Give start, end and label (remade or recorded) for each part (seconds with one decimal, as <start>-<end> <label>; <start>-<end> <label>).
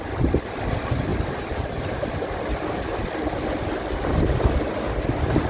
0.0-1.1 recorded; 1.1-4.4 remade; 4.4-5.5 recorded